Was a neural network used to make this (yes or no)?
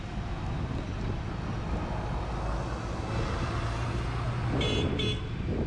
no